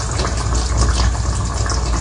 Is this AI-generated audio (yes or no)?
no